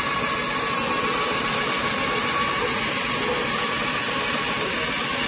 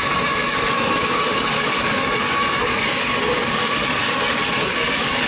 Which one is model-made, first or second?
second